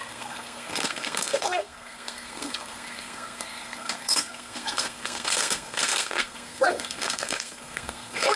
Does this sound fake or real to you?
fake